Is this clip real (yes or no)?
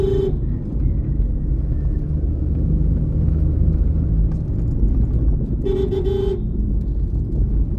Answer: yes